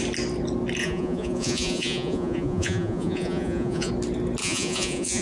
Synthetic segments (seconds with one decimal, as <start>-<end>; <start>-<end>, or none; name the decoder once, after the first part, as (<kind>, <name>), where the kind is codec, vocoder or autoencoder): 0.8-3.9 (vocoder, Vocos); 4.4-5.2